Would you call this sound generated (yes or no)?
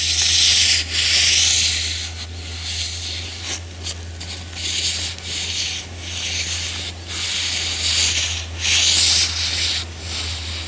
no